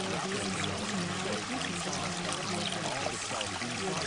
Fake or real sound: real